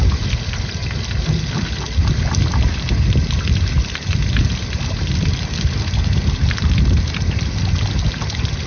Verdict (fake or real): real